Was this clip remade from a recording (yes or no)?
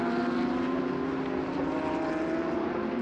no